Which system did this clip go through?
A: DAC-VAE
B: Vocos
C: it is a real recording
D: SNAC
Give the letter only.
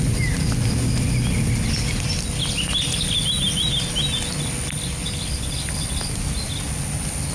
C